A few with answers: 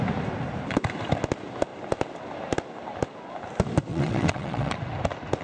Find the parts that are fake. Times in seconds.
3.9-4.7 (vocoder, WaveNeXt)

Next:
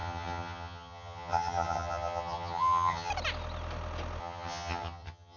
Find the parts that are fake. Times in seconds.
0.0-3.1 (vocoder, HiFi-GAN); 4.2-5.4

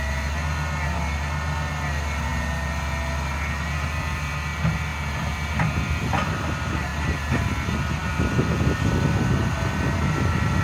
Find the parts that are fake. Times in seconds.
none

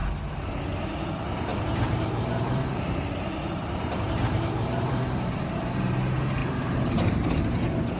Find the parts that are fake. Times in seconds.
1.5-5.7 (vocoder, BigVGAN v2); 6.4-8.0

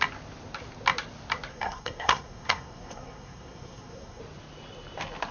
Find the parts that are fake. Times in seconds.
1.5-4.2 (codec, SNAC)